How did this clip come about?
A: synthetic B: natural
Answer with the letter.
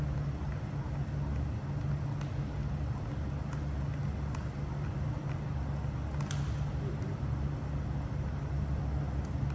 B